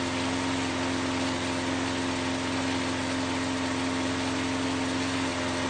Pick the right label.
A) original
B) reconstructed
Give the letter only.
A